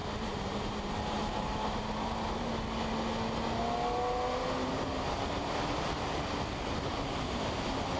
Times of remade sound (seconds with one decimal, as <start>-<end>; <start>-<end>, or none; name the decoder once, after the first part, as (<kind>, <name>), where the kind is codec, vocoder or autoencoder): 0.0-2.5 (vocoder, BigVGAN v2); 4.4-5.0